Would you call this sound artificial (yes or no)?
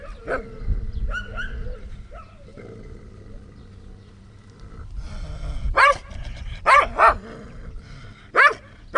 no